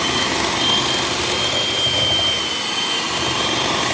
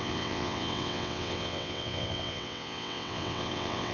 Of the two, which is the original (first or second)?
first